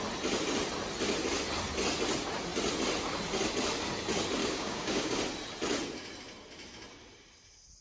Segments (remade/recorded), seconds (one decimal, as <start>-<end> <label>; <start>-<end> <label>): 0.0-4.4 recorded; 4.4-5.2 remade; 5.2-7.8 recorded